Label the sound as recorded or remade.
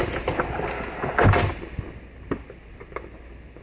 recorded